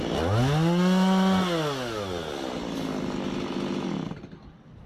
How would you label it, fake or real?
real